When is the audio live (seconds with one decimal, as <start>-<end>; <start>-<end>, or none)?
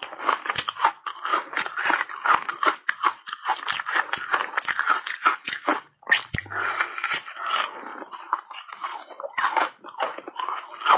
0.0-1.3; 2.1-7.9; 10.6-11.0